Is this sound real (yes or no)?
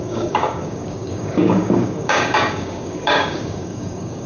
no